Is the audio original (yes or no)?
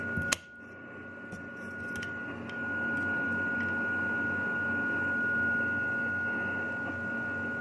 yes